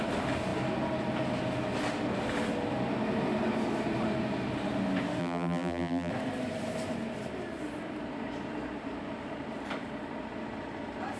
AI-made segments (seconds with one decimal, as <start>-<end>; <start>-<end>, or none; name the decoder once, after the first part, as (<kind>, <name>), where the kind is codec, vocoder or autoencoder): 5.2-6.1 (vocoder, BigVGAN v2)